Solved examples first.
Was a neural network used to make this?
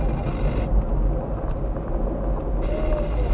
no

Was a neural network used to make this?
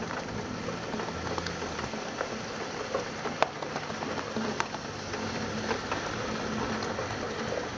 no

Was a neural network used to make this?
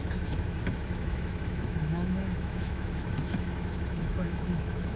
yes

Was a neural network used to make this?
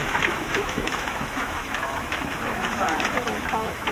yes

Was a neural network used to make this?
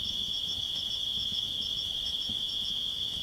yes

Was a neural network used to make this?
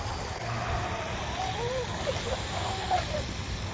no